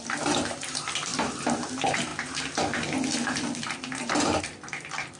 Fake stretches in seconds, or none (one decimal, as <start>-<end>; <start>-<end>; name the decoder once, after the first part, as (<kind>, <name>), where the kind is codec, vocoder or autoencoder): 0.0-2.1 (vocoder, BigVGAN v2); 4.4-5.2